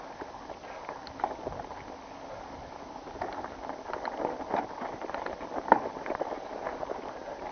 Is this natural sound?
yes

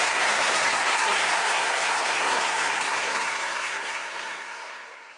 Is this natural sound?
no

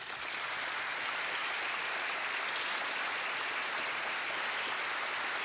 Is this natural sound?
yes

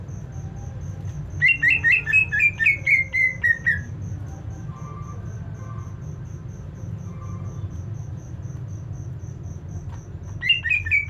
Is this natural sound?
yes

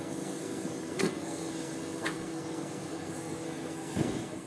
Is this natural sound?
no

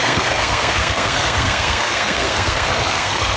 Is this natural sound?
no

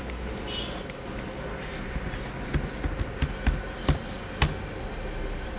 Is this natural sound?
yes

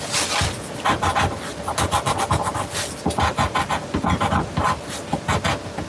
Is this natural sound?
yes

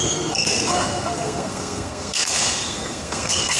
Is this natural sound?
no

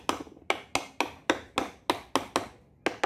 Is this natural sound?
yes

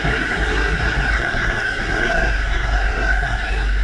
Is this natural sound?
no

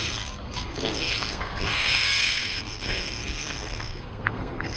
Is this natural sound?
no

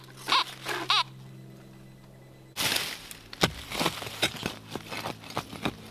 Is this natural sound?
yes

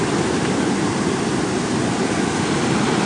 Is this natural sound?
yes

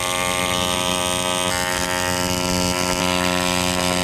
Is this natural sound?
yes